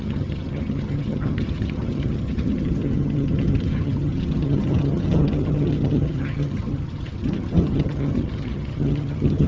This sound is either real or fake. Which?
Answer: fake